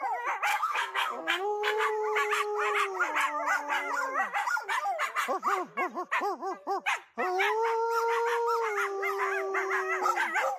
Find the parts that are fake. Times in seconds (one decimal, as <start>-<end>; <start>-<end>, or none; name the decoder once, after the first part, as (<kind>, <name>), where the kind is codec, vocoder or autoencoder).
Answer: 0.5-1.9 (codec, SNAC)